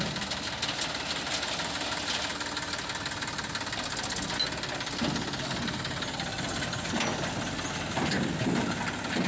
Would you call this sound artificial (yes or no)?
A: no